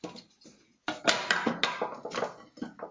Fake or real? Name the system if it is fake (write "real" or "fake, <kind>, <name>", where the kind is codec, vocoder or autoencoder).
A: real